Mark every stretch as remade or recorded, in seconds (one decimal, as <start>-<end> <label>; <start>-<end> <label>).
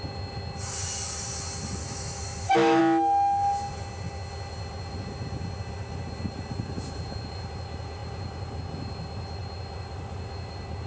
0.0-1.8 recorded; 1.8-2.8 remade; 2.8-10.9 recorded